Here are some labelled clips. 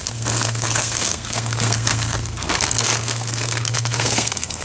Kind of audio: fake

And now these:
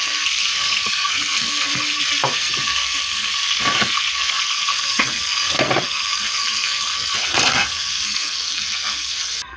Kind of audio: fake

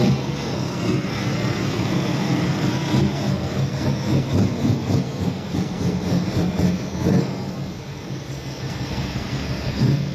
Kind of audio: fake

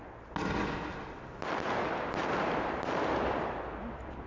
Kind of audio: real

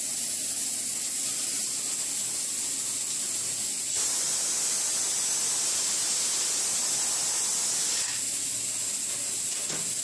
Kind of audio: real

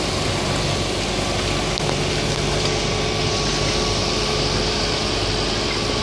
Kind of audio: real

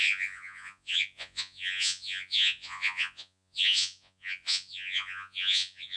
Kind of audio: fake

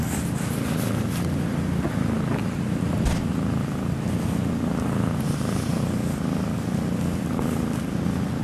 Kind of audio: real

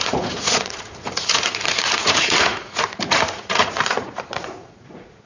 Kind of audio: fake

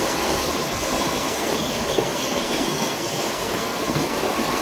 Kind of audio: fake